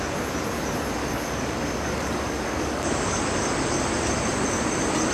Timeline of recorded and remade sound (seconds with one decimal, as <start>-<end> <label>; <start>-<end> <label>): 0.0-1.0 recorded; 1.0-3.2 remade; 3.2-5.1 recorded